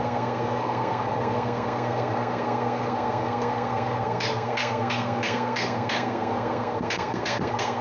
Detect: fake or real fake